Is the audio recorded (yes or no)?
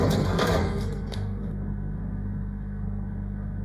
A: no